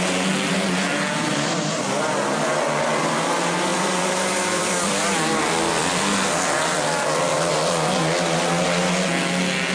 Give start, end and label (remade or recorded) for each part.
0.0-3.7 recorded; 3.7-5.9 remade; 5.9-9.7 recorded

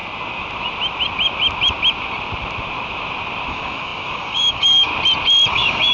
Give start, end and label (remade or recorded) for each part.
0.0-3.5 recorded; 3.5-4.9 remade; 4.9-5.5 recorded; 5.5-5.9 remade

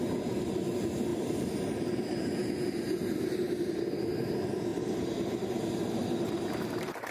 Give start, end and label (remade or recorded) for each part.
0.0-1.1 recorded; 1.1-2.3 remade; 2.3-4.7 recorded; 4.7-6.3 remade; 6.3-7.1 recorded

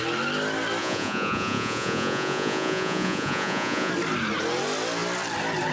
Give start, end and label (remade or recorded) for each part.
0.0-0.8 recorded; 0.8-3.9 remade; 3.9-5.7 recorded

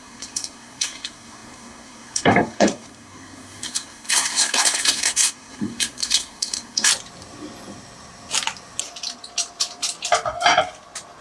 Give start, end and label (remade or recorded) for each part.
0.0-6.9 remade; 6.9-11.2 recorded

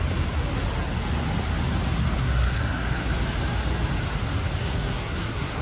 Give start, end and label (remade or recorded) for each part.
0.0-2.2 recorded; 2.2-3.1 remade; 3.1-4.6 recorded; 4.6-5.6 remade

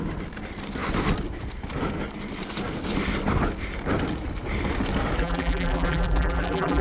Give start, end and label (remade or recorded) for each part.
0.0-5.2 recorded; 5.2-6.8 remade